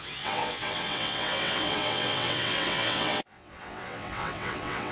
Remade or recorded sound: remade